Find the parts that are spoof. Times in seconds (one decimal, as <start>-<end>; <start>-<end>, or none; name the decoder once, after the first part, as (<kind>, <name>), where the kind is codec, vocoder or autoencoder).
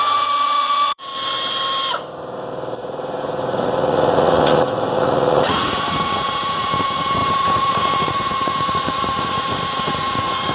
0.0-1.1 (vocoder, Vocos); 2.8-10.5